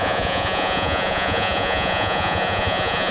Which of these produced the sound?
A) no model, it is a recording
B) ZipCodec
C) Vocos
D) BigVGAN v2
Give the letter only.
C